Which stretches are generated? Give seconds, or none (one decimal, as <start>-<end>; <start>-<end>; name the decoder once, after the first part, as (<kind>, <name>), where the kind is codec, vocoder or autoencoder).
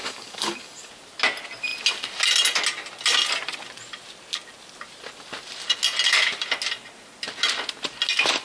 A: 0.0-0.9 (codec, DAC)